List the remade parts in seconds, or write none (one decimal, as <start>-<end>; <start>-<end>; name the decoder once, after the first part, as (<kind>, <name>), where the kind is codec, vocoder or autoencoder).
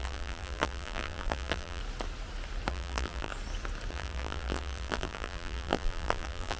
0.0-1.8 (vocoder, BigVGAN v2); 2.7-3.3; 3.9-6.6